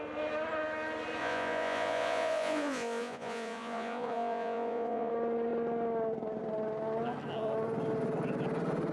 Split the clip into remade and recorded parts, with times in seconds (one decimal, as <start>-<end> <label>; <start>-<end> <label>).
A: 0.0-1.2 recorded; 1.2-5.1 remade; 5.1-8.9 recorded